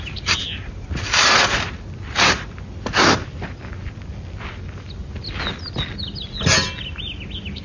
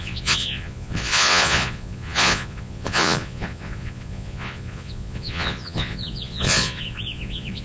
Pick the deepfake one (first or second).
second